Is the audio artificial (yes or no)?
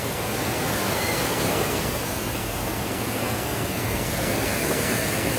yes